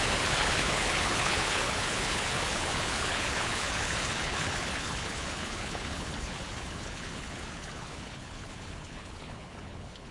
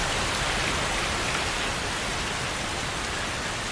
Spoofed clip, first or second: first